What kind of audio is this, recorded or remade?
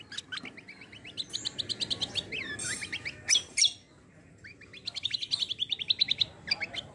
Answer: recorded